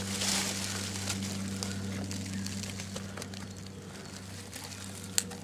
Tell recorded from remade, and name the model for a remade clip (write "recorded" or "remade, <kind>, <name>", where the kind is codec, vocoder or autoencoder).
recorded